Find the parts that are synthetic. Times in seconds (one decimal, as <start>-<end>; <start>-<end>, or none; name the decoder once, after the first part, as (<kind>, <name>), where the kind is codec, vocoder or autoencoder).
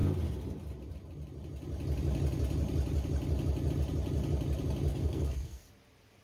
4.9-5.7 (codec, SNAC)